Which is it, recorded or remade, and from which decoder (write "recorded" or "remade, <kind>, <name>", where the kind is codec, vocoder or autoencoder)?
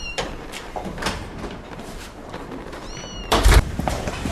remade, vocoder, BigVGAN v2